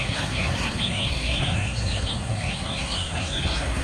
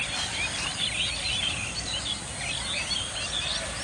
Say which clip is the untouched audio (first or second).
second